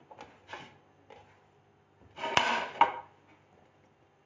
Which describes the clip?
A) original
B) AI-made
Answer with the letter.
A